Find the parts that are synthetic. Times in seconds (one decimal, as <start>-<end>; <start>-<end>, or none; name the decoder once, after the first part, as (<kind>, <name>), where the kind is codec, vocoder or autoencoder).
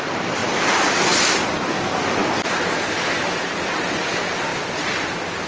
0.0-0.4 (vocoder, BigVGAN v2); 1.3-5.5